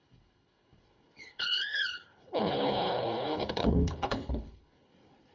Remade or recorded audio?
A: remade